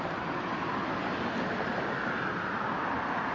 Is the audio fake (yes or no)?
no